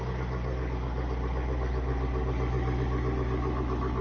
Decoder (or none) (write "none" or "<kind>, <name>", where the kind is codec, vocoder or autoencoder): none